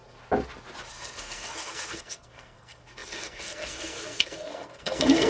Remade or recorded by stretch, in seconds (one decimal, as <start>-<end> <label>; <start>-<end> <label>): 0.0-0.9 recorded; 0.9-5.3 remade